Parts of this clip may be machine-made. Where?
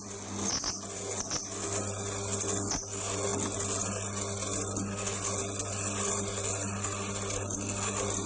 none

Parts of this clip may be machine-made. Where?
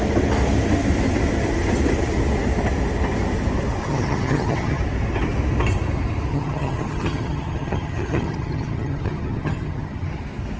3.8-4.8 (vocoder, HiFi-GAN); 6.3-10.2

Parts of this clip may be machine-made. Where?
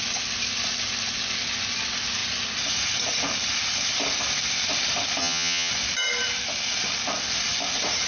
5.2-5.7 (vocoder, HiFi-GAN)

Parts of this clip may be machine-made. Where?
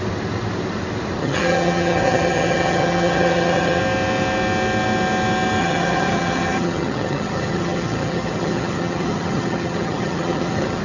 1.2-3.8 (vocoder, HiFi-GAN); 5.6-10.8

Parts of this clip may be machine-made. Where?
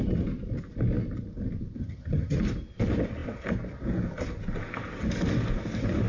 1.8-2.4 (vocoder, HiFi-GAN)